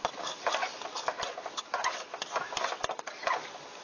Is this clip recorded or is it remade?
remade